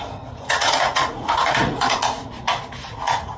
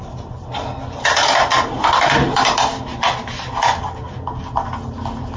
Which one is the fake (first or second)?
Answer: first